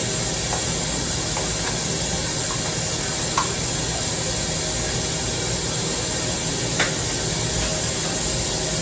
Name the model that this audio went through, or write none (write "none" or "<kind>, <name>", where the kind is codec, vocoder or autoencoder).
none